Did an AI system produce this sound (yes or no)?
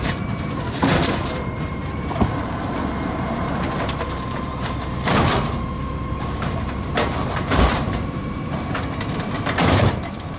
yes